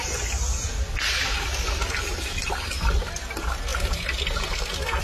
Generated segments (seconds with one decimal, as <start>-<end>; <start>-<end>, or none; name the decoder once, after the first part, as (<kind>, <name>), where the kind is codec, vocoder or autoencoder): none